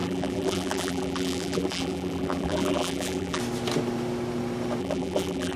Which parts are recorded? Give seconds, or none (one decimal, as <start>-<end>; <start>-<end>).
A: 3.4-4.8